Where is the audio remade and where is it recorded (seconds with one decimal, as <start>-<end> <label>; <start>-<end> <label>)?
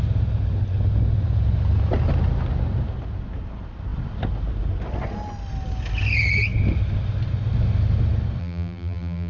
0.0-8.4 recorded; 8.4-9.3 remade